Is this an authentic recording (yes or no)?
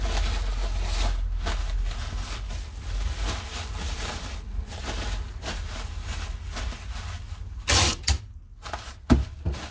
yes